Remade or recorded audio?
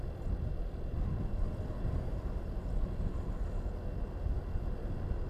recorded